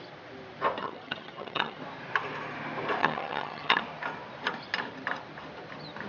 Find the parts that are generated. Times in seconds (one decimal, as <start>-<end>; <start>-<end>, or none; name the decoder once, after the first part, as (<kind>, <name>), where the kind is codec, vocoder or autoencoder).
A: 0.8-1.8 (vocoder, HiFi-GAN); 3.0-3.8